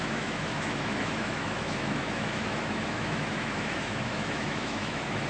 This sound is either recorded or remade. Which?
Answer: remade